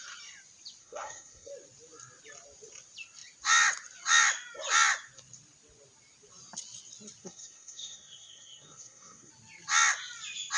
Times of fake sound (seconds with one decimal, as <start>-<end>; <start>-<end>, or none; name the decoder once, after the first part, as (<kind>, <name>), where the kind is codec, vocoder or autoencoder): 0.8-1.5 (codec, SNAC); 7.2-9.3